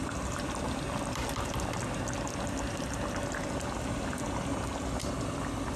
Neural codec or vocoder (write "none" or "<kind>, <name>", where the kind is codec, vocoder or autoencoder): vocoder, BigVGAN v2